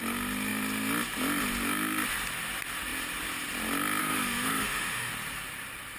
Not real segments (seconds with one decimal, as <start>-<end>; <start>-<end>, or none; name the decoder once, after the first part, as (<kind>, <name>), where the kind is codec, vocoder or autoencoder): 4.0-5.1 (autoencoder, DAC-VAE)